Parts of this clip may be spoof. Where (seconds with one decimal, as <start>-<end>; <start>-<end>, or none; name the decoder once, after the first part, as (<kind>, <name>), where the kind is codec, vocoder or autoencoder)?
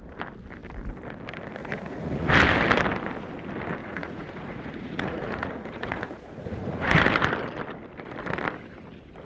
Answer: 1.6-2.3 (vocoder, Vocos); 3.8-7.0